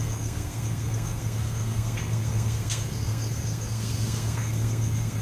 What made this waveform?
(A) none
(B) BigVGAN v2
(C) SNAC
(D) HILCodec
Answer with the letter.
C